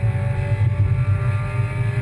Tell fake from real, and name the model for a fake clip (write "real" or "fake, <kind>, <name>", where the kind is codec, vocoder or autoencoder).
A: real